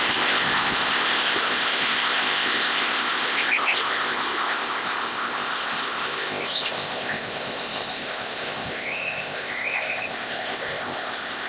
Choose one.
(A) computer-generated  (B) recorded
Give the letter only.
A